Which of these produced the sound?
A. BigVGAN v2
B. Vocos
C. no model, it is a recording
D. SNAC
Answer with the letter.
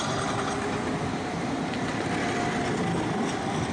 C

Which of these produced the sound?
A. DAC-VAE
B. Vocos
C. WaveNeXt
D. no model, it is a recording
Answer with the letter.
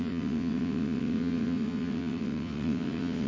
C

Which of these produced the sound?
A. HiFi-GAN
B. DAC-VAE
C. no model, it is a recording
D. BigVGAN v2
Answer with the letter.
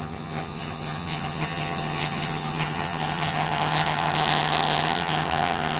A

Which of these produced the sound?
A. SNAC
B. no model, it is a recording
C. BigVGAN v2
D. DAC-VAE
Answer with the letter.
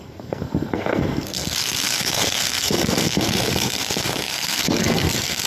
A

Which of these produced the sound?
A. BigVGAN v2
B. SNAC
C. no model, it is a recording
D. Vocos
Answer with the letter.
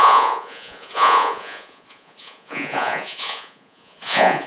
D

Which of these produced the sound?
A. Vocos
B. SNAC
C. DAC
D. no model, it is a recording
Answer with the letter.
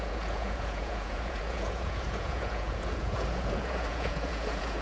A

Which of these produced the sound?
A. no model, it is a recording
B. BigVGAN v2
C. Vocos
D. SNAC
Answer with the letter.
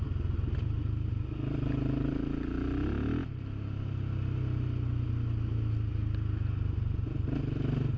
A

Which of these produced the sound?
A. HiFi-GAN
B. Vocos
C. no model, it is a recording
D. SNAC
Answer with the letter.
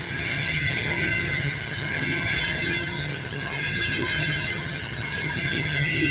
A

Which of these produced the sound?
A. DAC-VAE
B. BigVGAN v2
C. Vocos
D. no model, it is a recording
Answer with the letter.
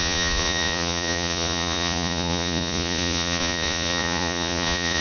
C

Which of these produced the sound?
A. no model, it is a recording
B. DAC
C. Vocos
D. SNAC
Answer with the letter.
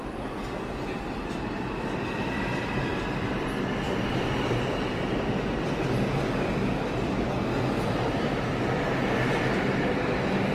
A